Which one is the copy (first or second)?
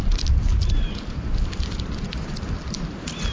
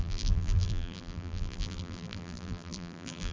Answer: second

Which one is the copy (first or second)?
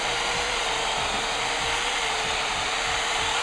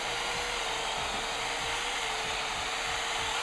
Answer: first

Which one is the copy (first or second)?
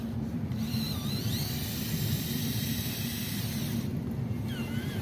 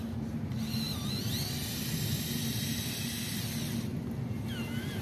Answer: first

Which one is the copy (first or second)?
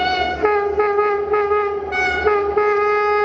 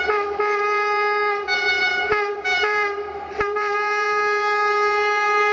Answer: second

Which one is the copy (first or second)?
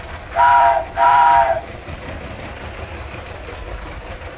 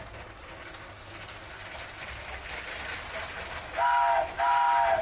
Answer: first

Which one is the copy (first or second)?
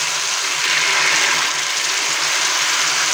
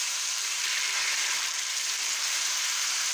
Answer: second